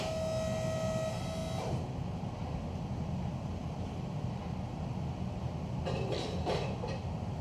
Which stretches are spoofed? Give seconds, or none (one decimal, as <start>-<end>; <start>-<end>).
none